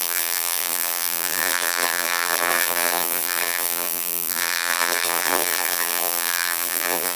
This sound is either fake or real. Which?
fake